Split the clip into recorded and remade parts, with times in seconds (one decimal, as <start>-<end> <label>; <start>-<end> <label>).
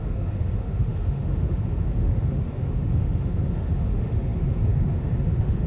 0.0-5.7 remade